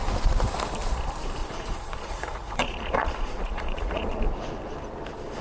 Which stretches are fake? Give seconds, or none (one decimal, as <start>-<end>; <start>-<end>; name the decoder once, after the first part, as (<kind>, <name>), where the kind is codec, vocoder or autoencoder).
1.4-4.2 (vocoder, Vocos)